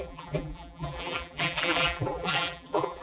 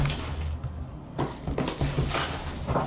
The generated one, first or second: first